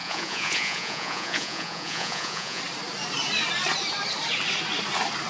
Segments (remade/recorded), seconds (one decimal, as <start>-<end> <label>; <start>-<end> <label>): 0.0-2.6 remade; 2.6-5.3 recorded